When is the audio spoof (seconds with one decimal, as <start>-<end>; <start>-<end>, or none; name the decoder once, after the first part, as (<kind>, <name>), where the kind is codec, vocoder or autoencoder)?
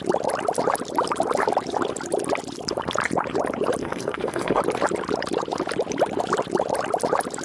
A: 3.8-4.6 (codec, SNAC)